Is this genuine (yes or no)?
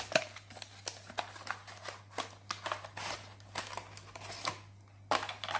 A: yes